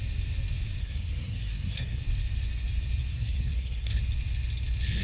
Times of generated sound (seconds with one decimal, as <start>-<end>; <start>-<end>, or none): 0.8-2.0; 3.1-4.0